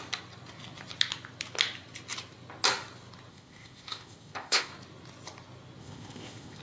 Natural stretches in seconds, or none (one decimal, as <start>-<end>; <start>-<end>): 0.0-3.3; 4.7-5.8